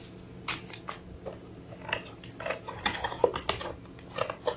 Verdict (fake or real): real